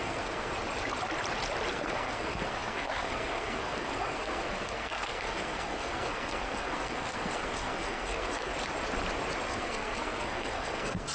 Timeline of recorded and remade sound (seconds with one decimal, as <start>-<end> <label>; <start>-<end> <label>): 0.0-0.5 remade; 0.5-1.7 recorded; 1.7-8.5 remade; 8.5-9.5 recorded; 9.5-11.1 remade